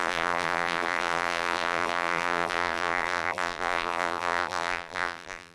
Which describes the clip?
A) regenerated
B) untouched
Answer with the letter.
A